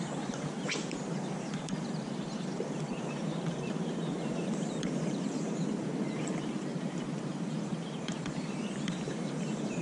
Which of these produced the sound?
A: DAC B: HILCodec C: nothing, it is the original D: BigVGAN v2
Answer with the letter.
D